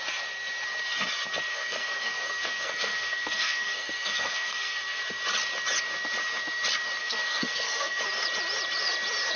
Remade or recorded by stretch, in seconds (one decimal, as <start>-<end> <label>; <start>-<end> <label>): 0.0-1.5 recorded; 1.5-5.0 remade; 5.0-7.0 recorded; 7.0-8.0 remade; 8.0-9.4 recorded